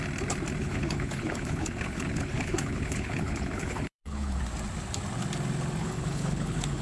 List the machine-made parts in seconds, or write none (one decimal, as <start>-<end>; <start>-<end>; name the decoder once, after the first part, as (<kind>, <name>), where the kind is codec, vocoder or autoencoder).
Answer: 0.6-4.4 (codec, HILCodec); 5.8-6.8